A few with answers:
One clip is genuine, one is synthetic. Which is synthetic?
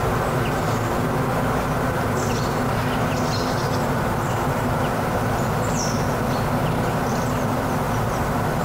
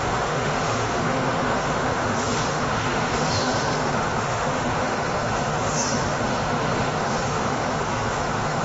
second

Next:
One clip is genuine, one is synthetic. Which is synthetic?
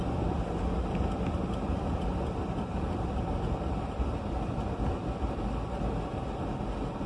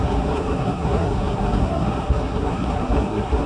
second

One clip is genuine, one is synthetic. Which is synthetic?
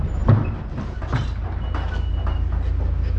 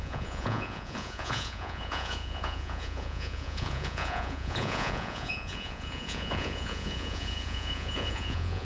second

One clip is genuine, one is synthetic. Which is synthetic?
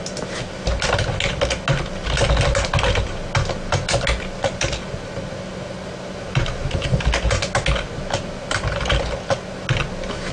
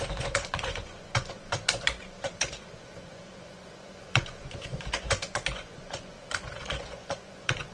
second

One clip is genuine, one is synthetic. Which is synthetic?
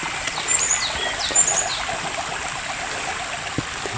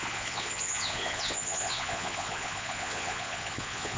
second